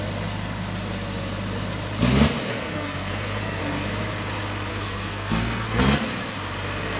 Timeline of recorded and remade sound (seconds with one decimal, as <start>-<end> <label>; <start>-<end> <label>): 0.0-2.5 recorded; 2.5-3.6 remade; 3.6-4.7 recorded; 4.7-6.0 remade; 6.0-7.0 recorded